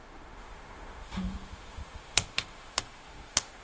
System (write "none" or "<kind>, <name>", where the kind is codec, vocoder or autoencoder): autoencoder, DAC-VAE